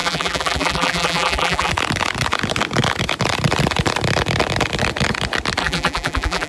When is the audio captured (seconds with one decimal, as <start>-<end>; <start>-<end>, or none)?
1.7-5.6